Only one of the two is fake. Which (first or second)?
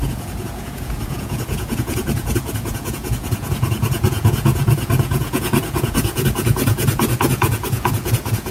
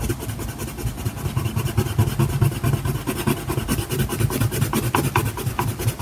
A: first